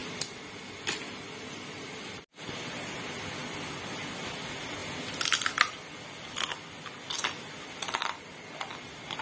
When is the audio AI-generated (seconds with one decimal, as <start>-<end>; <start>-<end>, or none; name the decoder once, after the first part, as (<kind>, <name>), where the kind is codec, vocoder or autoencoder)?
none